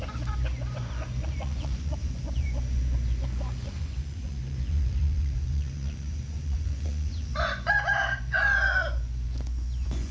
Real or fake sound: fake